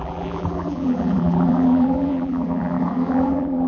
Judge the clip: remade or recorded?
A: remade